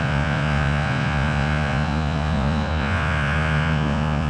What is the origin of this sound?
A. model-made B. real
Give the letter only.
A